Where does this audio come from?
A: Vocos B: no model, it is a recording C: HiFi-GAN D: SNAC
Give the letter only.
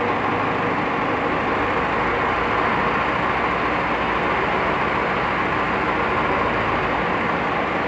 B